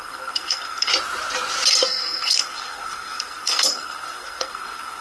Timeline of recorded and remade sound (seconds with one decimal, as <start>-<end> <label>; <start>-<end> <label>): 0.0-0.9 remade; 0.9-1.7 recorded; 1.7-5.0 remade